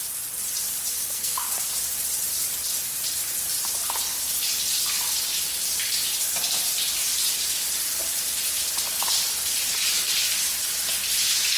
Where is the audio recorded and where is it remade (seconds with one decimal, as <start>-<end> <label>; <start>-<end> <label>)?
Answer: 0.0-0.9 recorded; 0.9-1.7 remade; 1.7-11.6 recorded